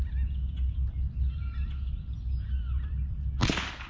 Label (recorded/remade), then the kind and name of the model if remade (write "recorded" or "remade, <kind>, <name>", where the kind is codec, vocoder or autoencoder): recorded